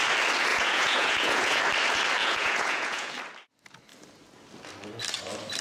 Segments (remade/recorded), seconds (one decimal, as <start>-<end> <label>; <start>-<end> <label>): 0.0-0.5 recorded; 0.5-1.6 remade; 1.6-2.2 recorded; 2.2-3.1 remade; 3.1-5.6 recorded